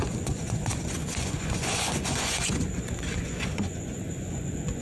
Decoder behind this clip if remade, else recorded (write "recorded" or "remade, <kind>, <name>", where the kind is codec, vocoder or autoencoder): remade, vocoder, Vocos